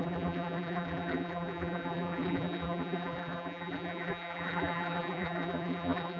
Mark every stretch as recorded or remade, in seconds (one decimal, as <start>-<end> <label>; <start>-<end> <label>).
0.0-6.2 remade